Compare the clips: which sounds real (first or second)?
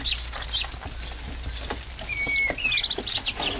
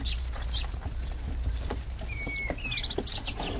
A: first